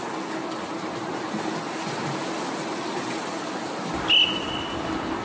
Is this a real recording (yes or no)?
yes